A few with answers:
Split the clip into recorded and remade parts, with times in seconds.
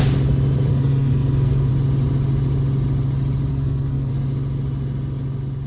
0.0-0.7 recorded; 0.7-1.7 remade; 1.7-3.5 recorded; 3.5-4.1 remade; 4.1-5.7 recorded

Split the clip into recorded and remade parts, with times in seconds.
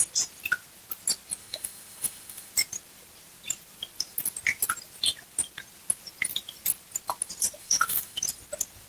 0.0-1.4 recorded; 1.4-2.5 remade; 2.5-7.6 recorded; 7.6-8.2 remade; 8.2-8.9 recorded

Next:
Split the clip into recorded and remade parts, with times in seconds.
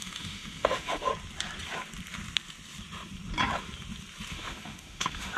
0.0-1.1 remade; 1.1-4.3 recorded; 4.3-5.4 remade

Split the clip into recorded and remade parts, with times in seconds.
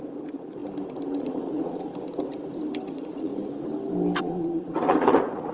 0.0-0.6 remade; 0.6-1.2 recorded; 1.2-1.9 remade; 1.9-2.9 recorded; 2.9-3.3 remade; 3.3-4.2 recorded; 4.2-5.5 remade